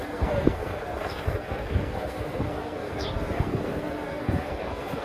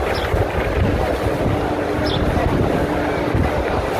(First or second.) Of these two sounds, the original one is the second